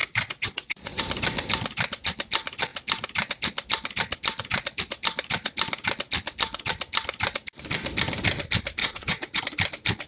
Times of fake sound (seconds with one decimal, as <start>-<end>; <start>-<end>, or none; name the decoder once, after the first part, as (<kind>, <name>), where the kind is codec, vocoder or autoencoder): 0.0-1.0 (vocoder, WaveNeXt); 8.8-9.4